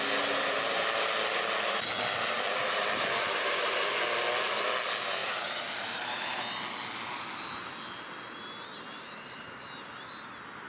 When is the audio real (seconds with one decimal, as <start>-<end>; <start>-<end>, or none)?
0.0-5.2; 6.6-10.7